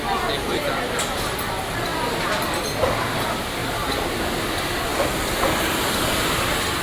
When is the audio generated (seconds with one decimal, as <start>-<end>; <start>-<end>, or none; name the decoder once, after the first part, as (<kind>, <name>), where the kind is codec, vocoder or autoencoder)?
3.6-4.2 (vocoder, BigVGAN v2)